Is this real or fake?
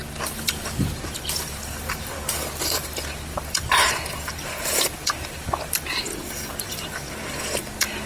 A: fake